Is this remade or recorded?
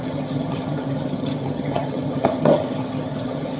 remade